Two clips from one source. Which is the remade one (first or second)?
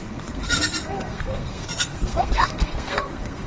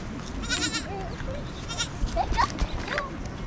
first